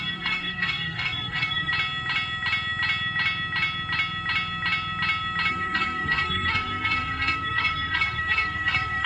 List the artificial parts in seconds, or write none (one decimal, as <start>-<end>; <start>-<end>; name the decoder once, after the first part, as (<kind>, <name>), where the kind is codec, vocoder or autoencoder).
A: 0.0-1.7 (codec, SNAC); 5.5-9.1